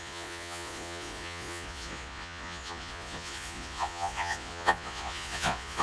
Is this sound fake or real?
fake